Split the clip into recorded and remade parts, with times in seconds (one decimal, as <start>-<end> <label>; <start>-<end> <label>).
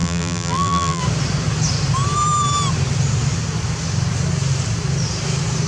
0.0-1.0 remade; 1.0-5.7 recorded